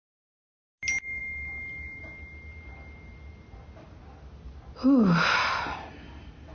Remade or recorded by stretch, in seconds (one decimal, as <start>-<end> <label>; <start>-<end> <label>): 0.0-6.5 recorded

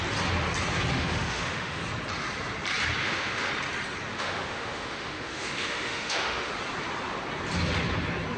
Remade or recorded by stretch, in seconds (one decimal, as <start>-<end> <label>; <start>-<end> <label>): 0.0-0.9 recorded; 0.9-1.8 remade; 1.8-3.0 recorded; 3.0-3.5 remade; 3.5-4.1 recorded; 4.1-6.5 remade; 6.5-8.4 recorded